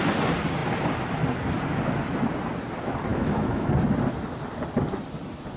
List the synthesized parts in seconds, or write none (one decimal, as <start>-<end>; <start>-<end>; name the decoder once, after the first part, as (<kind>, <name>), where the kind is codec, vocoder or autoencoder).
3.1-3.7 (autoencoder, DAC-VAE)